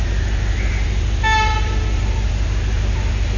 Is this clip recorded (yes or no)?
yes